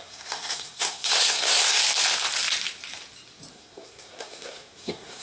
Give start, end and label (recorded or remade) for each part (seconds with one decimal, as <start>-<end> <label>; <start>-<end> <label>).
0.0-1.8 remade; 1.8-3.5 recorded; 3.5-5.2 remade